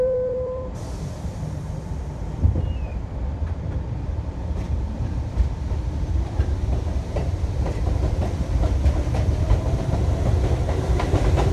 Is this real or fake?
fake